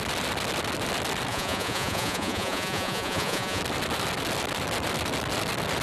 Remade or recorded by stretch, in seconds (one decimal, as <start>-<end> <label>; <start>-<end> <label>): 0.0-1.3 recorded; 1.3-3.6 remade; 3.6-5.8 recorded